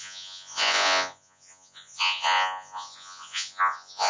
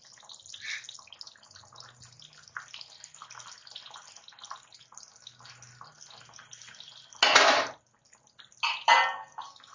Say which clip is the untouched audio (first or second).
second